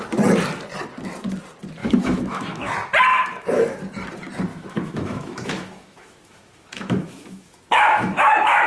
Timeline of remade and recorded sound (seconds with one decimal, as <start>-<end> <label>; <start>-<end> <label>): 0.0-1.8 recorded; 1.8-2.7 remade; 2.7-3.1 recorded; 3.1-3.8 remade; 3.8-4.5 recorded; 4.5-8.7 remade